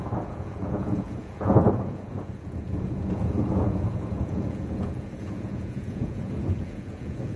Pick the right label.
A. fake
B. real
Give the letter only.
A